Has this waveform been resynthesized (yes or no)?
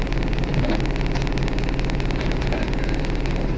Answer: yes